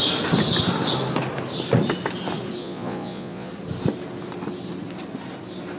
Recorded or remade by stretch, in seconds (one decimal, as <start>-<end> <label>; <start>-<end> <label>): 0.0-2.6 recorded; 2.6-3.5 remade; 3.5-5.8 recorded